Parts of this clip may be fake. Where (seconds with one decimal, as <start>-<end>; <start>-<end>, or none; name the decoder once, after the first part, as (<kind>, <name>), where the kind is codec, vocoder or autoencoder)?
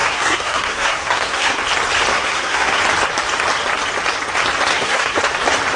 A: 0.0-1.6 (codec, SNAC); 2.1-2.8; 4.7-5.2